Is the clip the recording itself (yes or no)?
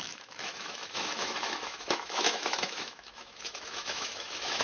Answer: no